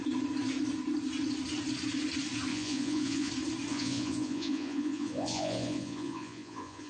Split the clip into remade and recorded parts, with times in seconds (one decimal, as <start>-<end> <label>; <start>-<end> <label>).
0.0-2.5 recorded; 2.5-3.3 remade; 3.3-3.7 recorded; 3.7-6.9 remade